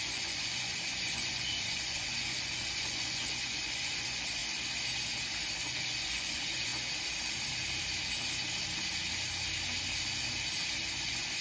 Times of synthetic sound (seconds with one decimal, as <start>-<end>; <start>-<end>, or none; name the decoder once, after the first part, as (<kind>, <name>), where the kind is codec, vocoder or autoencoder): 0.0-4.4 (vocoder, Vocos); 5.6-6.7; 10.9-11.4